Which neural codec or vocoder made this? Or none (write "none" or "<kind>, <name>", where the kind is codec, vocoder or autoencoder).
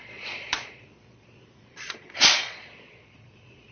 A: vocoder, Vocos